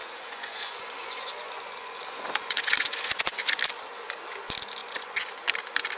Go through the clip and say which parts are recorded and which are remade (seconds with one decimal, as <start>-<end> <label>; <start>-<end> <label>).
0.0-3.6 remade; 3.6-4.8 recorded; 4.8-5.4 remade; 5.4-6.0 recorded